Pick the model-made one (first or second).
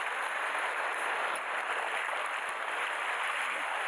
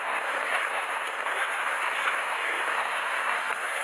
second